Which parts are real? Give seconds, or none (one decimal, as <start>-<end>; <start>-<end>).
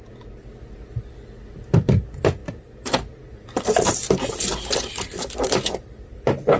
0.0-6.6